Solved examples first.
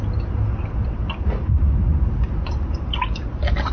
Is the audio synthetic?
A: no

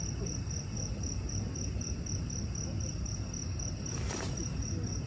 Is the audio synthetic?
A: no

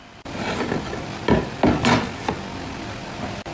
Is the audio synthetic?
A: no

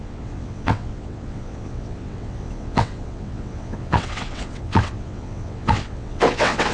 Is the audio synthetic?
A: yes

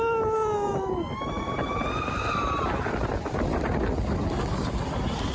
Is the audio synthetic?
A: no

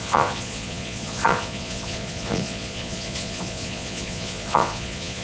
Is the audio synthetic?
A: yes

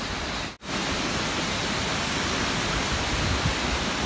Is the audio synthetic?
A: no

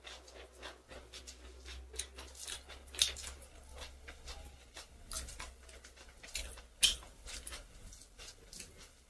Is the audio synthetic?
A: no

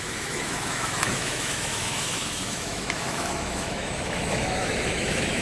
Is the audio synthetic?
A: yes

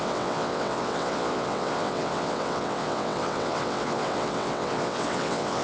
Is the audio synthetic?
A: yes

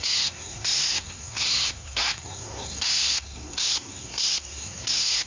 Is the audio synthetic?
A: yes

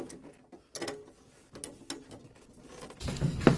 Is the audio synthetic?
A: no